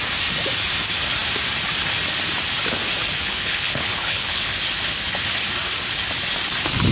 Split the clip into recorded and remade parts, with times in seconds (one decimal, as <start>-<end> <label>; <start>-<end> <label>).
0.0-3.2 recorded; 3.2-4.5 remade; 4.5-6.9 recorded